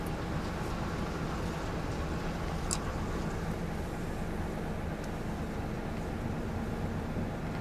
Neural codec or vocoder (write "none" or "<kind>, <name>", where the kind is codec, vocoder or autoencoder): none